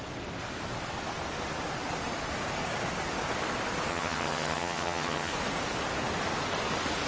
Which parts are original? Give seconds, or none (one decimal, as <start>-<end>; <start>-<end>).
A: 0.0-3.9; 5.3-7.1